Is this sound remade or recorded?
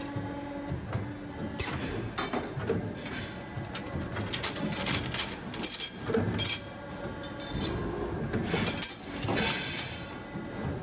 recorded